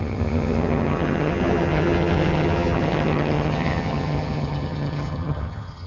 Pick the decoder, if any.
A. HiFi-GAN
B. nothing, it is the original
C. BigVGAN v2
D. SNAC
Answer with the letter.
A